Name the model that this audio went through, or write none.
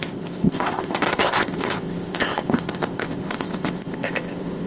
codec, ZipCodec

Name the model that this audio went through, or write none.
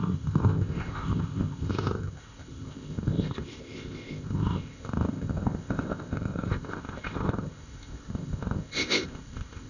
codec, ZipCodec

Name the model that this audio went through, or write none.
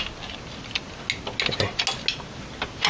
none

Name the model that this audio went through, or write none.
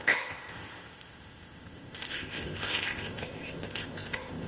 codec, ZipCodec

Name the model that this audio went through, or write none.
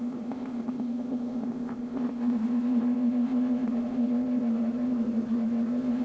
codec, ZipCodec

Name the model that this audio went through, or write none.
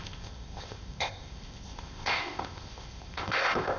codec, ZipCodec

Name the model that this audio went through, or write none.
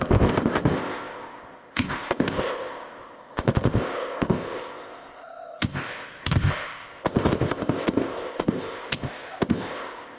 codec, ZipCodec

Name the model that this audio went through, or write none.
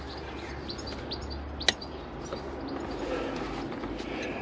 none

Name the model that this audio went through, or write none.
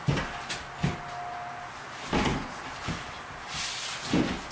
none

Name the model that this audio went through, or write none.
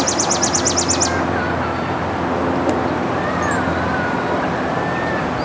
none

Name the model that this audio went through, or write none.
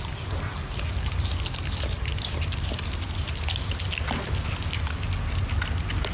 none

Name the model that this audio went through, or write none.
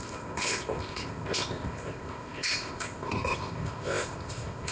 codec, ZipCodec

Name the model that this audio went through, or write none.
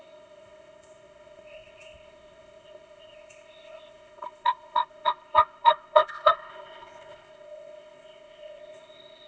codec, ZipCodec